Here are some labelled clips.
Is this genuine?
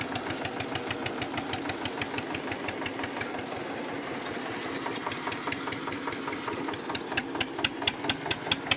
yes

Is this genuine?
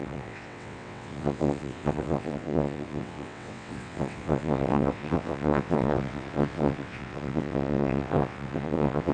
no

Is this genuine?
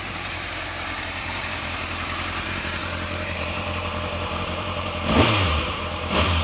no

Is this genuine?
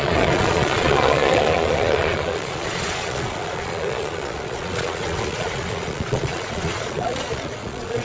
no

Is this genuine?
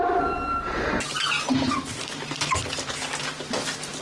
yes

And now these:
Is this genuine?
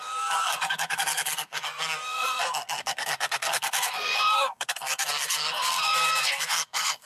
no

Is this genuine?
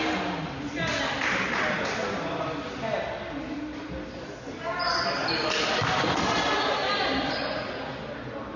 yes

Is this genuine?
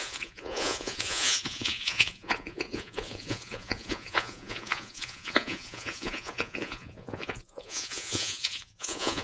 no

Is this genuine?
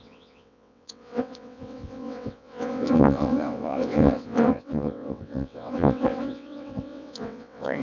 no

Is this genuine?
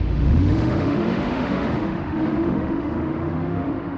no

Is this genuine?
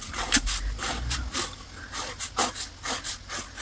yes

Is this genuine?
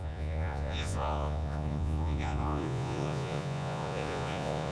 no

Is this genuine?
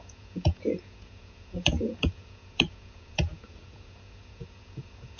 no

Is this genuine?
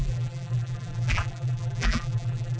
no